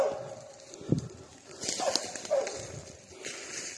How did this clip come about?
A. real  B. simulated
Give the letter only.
A